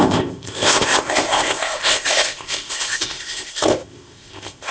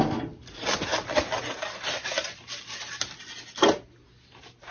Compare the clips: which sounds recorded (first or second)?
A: second